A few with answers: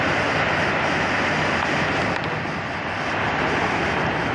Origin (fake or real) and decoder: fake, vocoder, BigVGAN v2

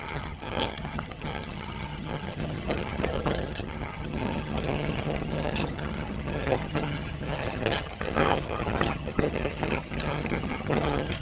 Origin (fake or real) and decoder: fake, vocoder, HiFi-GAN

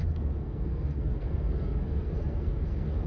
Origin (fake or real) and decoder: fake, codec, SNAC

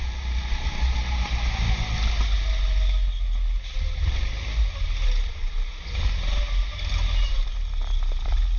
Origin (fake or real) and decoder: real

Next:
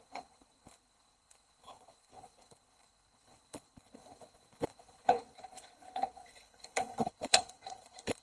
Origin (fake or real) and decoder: fake, codec, HILCodec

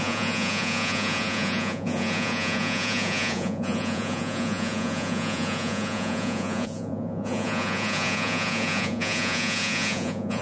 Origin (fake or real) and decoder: fake, vocoder, Vocos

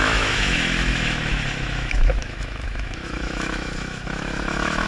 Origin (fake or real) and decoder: fake, autoencoder, DAC-VAE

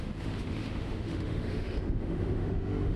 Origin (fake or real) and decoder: fake, autoencoder, DAC-VAE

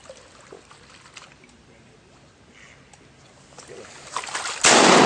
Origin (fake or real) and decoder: real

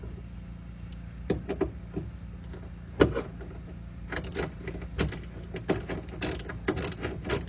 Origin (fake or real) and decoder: real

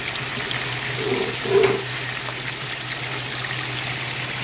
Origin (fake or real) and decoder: real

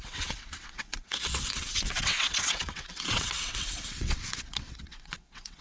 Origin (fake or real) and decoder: fake, vocoder, WaveNeXt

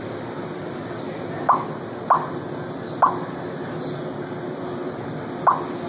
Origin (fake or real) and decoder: real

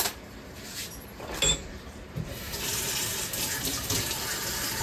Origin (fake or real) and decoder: fake, vocoder, BigVGAN v2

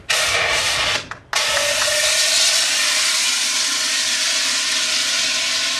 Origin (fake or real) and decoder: real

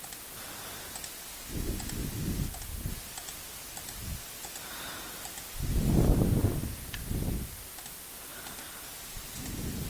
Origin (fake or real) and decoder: real